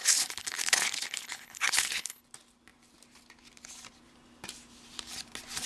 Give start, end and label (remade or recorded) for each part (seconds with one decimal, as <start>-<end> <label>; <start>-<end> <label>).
0.0-2.2 remade; 2.2-5.7 recorded